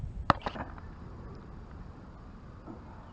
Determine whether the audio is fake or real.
real